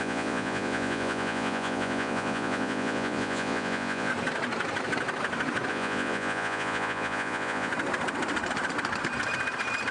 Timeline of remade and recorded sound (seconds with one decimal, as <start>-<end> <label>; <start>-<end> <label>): 0.0-4.1 remade; 4.1-5.7 recorded; 5.7-7.7 remade; 7.7-9.9 recorded